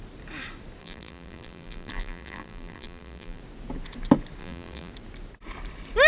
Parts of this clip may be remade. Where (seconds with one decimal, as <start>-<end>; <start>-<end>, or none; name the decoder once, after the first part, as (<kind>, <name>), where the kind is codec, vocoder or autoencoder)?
0.8-3.4 (vocoder, BigVGAN v2); 4.4-4.9